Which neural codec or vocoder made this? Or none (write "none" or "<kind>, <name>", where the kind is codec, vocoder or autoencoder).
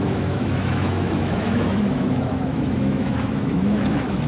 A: autoencoder, DAC-VAE